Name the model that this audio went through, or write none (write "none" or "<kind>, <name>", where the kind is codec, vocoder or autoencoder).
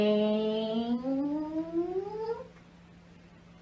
none